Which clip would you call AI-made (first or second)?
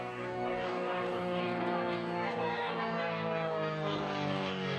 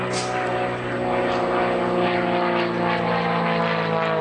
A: first